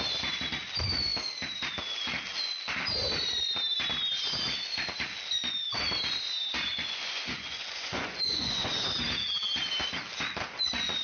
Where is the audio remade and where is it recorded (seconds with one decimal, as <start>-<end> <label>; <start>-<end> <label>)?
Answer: 0.0-6.7 recorded; 6.7-8.7 remade; 8.7-11.0 recorded